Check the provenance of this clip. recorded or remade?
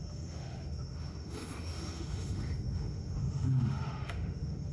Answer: remade